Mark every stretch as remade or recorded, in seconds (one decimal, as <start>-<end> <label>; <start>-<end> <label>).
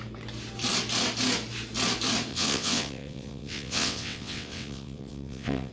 0.0-2.3 recorded; 2.3-5.7 remade